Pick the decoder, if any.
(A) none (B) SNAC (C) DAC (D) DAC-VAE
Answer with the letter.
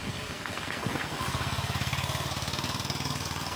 B